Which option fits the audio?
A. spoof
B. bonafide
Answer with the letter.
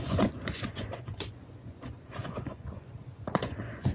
A